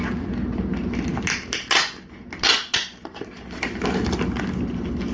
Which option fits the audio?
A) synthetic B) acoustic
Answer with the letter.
B